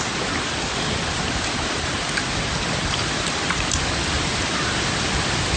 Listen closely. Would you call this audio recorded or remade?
recorded